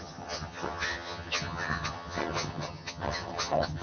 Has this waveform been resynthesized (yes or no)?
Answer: yes